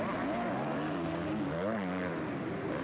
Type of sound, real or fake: real